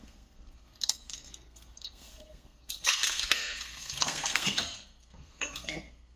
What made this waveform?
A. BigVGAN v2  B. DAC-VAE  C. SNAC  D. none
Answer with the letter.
C